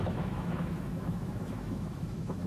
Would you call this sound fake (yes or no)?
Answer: yes